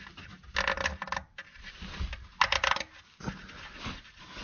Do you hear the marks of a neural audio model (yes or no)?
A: no